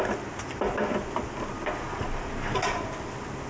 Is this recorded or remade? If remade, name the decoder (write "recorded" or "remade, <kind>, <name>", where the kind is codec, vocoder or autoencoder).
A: recorded